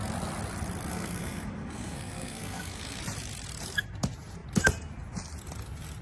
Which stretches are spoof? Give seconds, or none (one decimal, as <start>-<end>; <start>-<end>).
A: 0.9-3.0